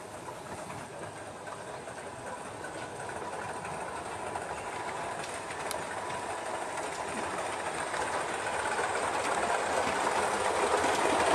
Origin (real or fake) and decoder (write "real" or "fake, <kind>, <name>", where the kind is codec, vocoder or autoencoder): real